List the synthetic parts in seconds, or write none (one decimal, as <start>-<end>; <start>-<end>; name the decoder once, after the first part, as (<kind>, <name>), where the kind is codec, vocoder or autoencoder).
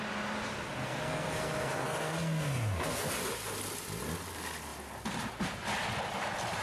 0.8-3.1 (codec, SNAC)